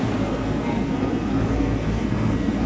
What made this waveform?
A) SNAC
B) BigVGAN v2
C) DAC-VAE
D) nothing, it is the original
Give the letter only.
A